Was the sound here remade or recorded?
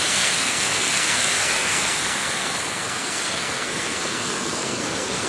remade